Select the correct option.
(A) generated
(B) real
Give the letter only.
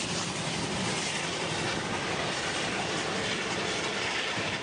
B